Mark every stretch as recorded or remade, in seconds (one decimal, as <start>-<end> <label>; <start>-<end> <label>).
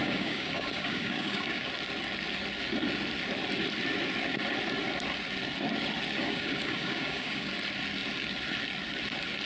0.0-1.7 remade; 1.7-6.2 recorded; 6.2-7.5 remade; 7.5-9.5 recorded